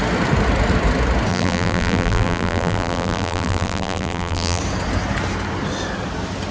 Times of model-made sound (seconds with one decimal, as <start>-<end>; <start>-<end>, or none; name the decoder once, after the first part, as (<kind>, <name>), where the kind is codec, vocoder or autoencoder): 1.3-4.6 (vocoder, BigVGAN v2)